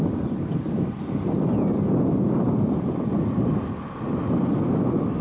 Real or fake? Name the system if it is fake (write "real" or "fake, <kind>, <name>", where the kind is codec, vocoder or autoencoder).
real